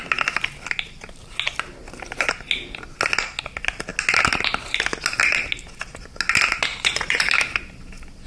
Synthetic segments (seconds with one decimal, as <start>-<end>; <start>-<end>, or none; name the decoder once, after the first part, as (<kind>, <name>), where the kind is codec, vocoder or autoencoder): 6.7-7.3 (vocoder, Vocos)